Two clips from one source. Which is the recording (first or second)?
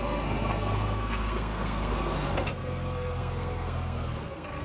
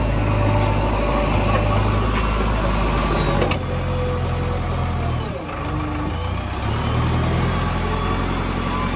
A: second